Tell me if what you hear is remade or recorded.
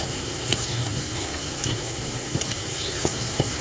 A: remade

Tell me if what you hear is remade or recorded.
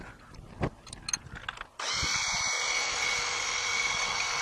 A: recorded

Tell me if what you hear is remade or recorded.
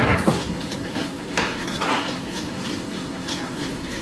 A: remade